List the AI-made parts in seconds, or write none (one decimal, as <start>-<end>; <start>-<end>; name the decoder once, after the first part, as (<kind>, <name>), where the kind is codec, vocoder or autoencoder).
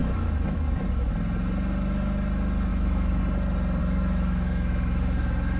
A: 0.0-0.8 (autoencoder, DAC-VAE); 2.7-3.2; 3.8-5.6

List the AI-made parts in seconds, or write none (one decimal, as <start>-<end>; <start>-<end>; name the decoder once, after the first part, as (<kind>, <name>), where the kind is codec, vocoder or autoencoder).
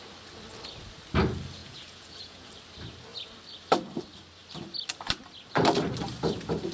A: 1.6-2.5 (vocoder, Vocos)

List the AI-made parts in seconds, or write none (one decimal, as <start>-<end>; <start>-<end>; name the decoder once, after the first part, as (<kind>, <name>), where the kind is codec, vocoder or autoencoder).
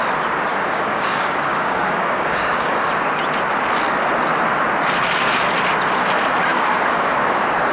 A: 0.5-2.9 (codec, DAC); 6.5-7.7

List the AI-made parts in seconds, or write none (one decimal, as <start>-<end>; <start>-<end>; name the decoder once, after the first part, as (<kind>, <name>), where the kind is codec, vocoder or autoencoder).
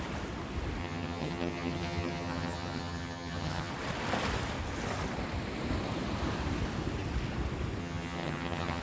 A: 0.8-3.7 (vocoder, HiFi-GAN); 7.8-8.8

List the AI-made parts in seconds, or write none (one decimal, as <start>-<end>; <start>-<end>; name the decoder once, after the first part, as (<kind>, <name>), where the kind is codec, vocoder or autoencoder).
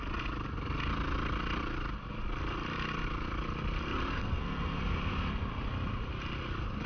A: 4.1-4.8 (codec, SNAC)